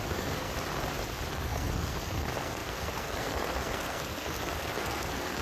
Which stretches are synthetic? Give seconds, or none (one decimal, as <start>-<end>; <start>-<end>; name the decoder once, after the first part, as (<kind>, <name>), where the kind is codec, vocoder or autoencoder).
0.0-0.5 (codec, SNAC); 1.3-5.4